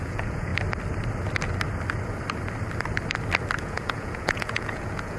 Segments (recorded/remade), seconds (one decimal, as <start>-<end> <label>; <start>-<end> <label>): 0.0-0.5 remade; 0.5-3.6 recorded; 3.6-5.2 remade